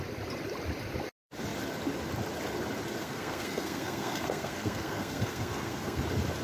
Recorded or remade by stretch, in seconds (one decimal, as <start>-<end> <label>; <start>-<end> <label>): 0.0-3.0 recorded; 3.0-6.0 remade; 6.0-6.4 recorded